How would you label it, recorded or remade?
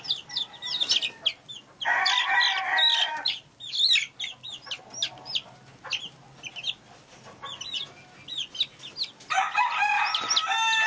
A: recorded